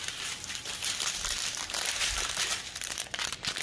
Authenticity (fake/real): fake